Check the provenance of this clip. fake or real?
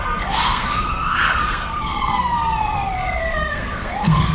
fake